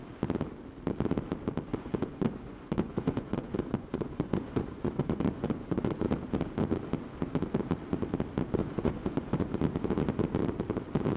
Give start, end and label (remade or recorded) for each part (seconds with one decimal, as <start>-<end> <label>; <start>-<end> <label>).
0.0-1.7 recorded; 1.7-6.0 remade; 6.0-8.6 recorded; 8.6-9.5 remade; 9.5-11.2 recorded